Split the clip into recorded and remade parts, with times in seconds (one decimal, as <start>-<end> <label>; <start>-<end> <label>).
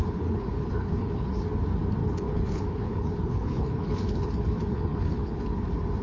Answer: 0.0-1.3 remade; 1.3-2.0 recorded; 2.0-5.6 remade; 5.6-6.0 recorded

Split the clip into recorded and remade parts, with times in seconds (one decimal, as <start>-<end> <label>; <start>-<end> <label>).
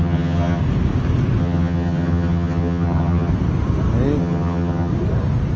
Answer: 0.0-0.6 remade; 0.6-1.4 recorded; 1.4-3.3 remade; 3.3-4.2 recorded; 4.2-4.9 remade; 4.9-5.6 recorded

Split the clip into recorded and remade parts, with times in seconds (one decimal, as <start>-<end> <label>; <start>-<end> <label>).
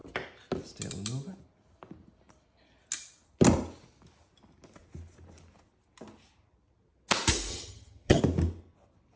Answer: 0.0-7.5 recorded; 7.5-8.2 remade; 8.2-9.2 recorded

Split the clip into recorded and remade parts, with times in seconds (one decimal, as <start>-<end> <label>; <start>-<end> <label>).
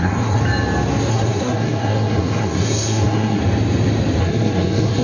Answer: 0.0-0.4 remade; 0.4-1.1 recorded; 1.1-3.4 remade; 3.4-4.2 recorded; 4.2-5.0 remade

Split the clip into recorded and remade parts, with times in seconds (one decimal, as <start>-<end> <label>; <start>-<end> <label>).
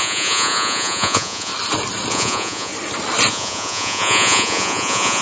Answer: 0.0-1.5 remade; 1.5-2.1 recorded; 2.1-2.7 remade; 2.7-3.3 recorded; 3.3-5.2 remade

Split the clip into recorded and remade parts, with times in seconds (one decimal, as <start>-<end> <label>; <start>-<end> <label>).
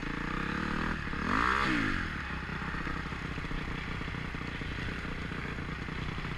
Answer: 0.0-6.4 recorded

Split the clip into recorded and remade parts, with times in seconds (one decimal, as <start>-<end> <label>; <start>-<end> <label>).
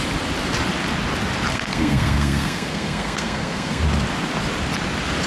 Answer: 0.0-1.5 recorded; 1.5-3.8 remade; 3.8-5.3 recorded